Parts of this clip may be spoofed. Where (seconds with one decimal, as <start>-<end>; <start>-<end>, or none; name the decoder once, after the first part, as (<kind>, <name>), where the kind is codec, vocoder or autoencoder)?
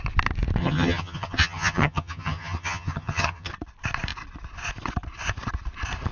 0.6-3.5 (vocoder, HiFi-GAN)